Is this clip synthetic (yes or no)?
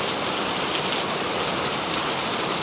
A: no